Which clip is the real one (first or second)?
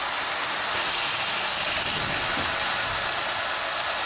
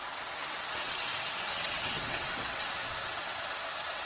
first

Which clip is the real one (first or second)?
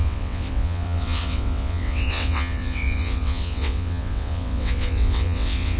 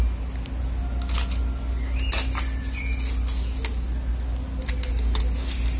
second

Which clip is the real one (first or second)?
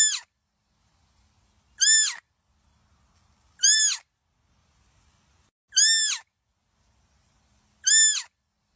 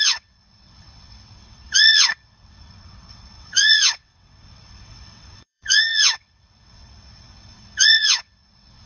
first